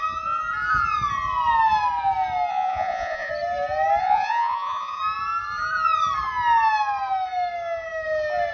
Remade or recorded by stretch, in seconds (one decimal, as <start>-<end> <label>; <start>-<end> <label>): 0.0-2.5 recorded; 2.5-3.3 remade; 3.3-4.0 recorded; 4.0-5.0 remade; 5.0-8.5 recorded